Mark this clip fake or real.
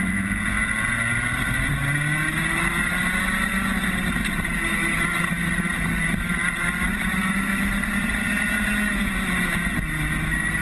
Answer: real